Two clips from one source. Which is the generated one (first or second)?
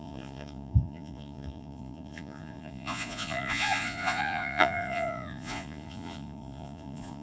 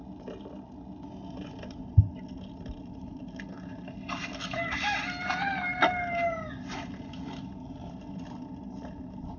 first